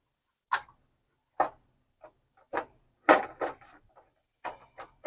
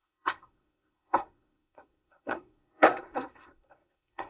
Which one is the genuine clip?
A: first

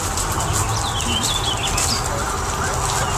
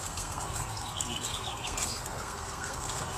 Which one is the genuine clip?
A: first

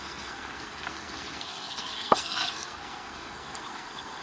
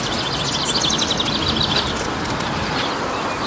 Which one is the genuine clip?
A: second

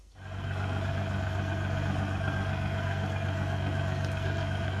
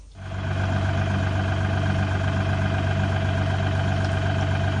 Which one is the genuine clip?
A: second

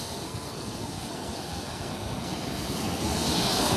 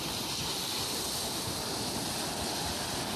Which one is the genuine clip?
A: second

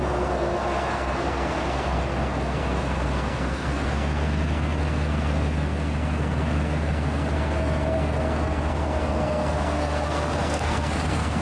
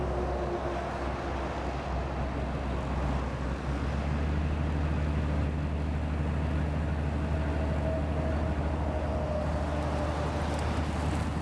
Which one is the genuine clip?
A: second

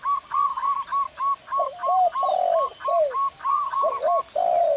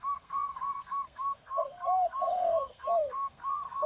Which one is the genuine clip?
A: first